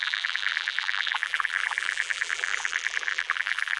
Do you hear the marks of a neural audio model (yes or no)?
yes